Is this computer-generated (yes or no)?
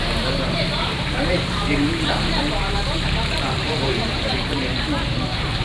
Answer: yes